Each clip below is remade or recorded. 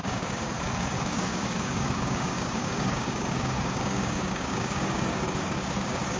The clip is remade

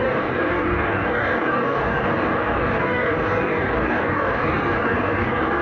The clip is remade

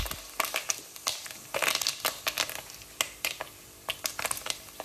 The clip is recorded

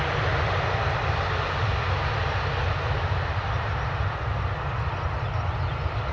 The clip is recorded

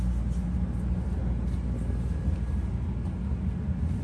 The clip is recorded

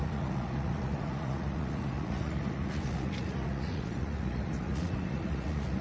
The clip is remade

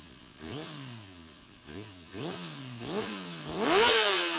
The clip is remade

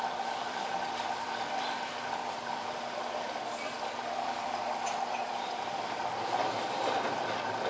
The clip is remade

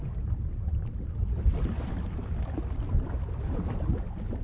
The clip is recorded